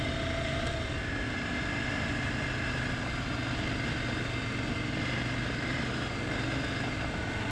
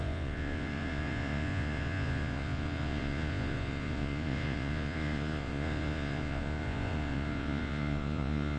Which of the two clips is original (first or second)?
first